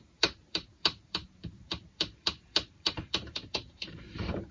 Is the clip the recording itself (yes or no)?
no